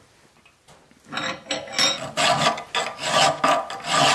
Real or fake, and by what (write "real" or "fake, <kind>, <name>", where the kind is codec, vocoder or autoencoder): real